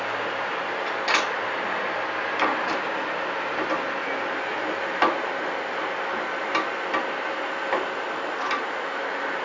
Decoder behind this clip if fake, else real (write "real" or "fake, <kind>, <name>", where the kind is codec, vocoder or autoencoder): real